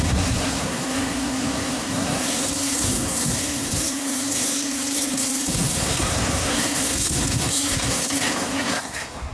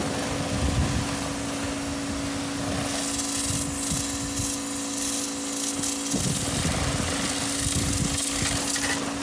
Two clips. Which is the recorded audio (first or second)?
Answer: second